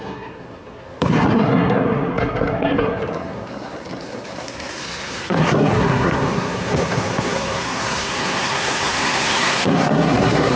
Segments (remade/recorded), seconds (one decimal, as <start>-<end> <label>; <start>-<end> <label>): 0.0-10.6 remade